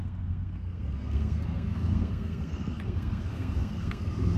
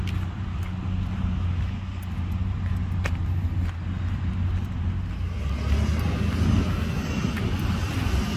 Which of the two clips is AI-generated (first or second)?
first